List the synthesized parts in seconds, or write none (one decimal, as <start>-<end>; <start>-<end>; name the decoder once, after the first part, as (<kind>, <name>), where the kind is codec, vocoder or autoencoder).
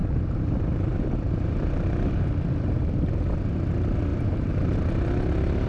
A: 0.0-2.1 (vocoder, BigVGAN v2); 4.1-4.7